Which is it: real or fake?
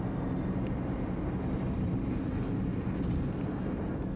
real